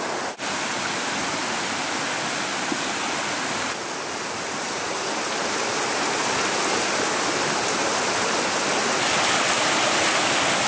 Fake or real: real